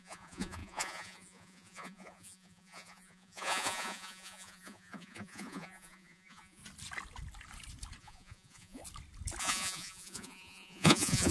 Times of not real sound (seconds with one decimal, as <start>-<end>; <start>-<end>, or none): 0.0-6.6; 8.0-8.8; 9.4-11.3

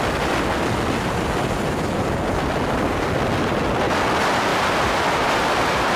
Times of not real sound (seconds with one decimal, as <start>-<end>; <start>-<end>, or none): 4.5-6.0

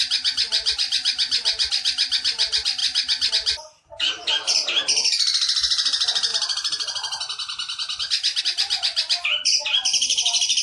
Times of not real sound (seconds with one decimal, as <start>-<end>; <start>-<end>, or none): none

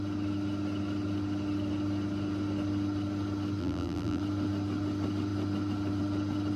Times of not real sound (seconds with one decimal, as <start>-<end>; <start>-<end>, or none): 3.6-4.2